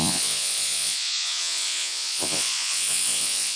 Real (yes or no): no